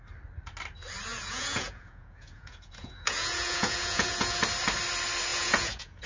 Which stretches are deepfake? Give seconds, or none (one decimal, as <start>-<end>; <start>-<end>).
1.1-4.4; 5.3-6.1